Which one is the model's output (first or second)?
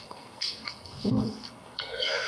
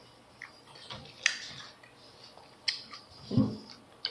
first